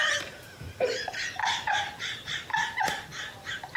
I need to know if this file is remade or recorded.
remade